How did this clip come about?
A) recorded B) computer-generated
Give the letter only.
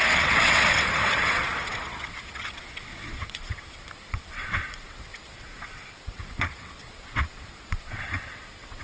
B